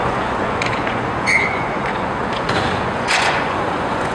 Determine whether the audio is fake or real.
fake